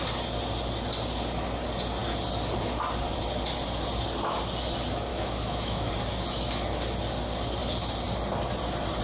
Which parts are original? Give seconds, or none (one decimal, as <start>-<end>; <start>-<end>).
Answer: 0.0-5.1; 5.9-9.0